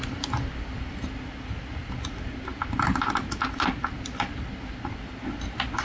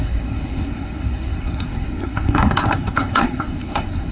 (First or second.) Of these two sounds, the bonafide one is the first